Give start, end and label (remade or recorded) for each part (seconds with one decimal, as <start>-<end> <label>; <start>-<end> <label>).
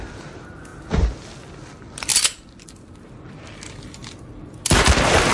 0.0-5.3 recorded